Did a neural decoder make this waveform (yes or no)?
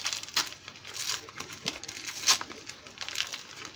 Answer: no